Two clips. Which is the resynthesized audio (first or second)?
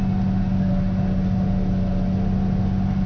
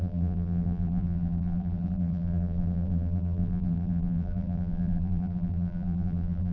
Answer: second